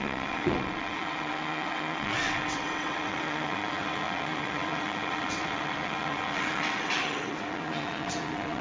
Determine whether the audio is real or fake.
fake